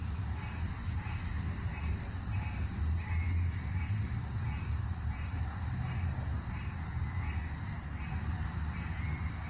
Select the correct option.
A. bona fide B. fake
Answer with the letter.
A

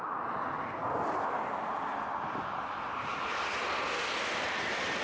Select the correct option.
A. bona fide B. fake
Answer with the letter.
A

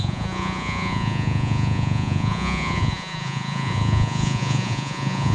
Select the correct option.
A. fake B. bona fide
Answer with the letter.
A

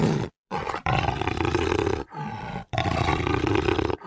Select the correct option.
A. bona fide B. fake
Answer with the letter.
B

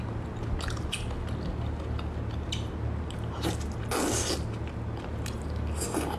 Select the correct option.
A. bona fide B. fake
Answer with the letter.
A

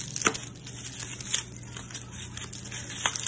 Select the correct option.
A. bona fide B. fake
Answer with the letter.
A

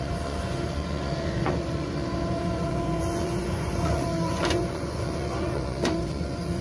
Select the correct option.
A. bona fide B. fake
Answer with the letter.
B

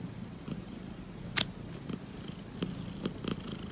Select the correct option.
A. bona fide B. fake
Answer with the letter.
A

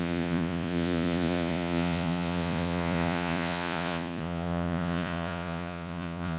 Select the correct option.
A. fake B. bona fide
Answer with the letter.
A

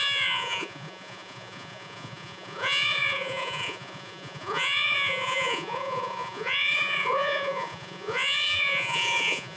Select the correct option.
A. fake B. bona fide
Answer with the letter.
A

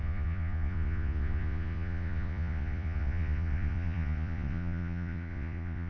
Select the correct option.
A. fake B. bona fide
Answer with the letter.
A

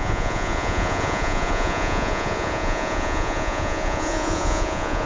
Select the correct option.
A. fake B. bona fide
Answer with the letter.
A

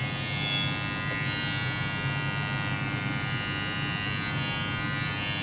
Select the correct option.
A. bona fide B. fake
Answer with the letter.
A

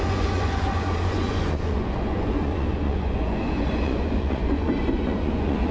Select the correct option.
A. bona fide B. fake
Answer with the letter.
B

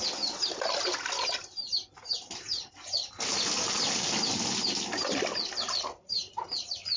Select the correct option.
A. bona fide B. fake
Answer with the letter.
A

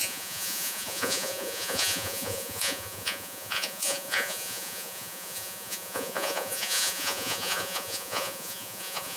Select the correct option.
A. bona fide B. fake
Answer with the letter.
B